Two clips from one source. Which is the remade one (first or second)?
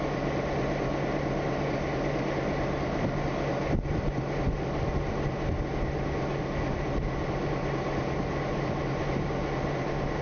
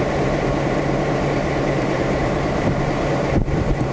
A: second